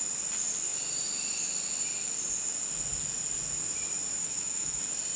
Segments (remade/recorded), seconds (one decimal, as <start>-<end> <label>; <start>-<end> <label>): 0.0-4.2 recorded; 4.2-4.8 remade; 4.8-5.2 recorded